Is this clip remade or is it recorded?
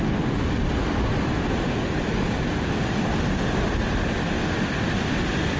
recorded